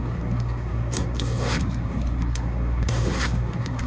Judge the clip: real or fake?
fake